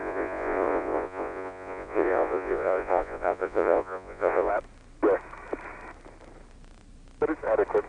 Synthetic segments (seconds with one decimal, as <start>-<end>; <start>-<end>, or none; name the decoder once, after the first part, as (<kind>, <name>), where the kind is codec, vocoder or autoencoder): 0.0-4.5 (vocoder, Vocos)